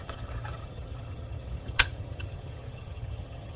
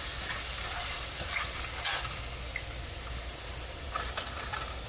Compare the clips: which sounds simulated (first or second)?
first